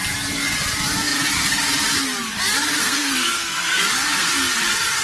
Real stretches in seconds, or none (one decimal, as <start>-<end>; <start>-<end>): 0.0-2.8; 4.3-5.0